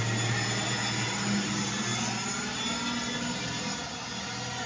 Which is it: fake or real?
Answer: real